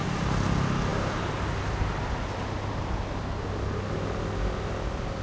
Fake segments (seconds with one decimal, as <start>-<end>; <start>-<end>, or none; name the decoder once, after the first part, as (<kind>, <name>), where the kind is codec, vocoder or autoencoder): none